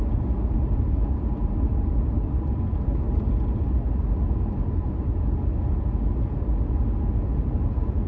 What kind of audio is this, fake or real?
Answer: real